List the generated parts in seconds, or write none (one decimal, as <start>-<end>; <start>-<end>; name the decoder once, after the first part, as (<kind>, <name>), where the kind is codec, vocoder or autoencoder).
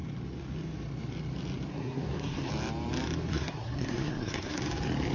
1.7-2.5 (codec, SNAC); 3.3-4.6